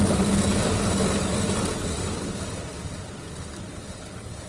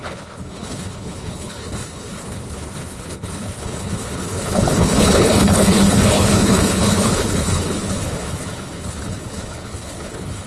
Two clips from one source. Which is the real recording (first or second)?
first